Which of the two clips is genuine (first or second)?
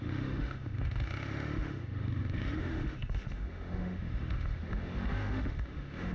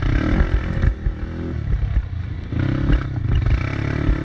second